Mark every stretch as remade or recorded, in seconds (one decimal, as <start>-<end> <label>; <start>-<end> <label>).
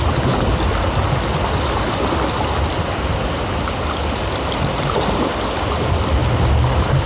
0.0-7.1 recorded